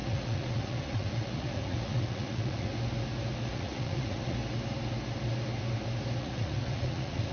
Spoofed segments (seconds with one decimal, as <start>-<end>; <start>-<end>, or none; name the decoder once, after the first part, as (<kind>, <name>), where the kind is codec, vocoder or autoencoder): 0.0-2.7 (vocoder, Vocos); 3.5-4.4; 6.2-7.3